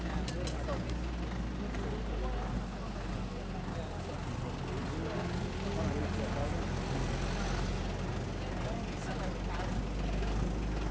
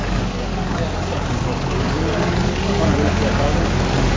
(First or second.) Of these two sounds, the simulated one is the second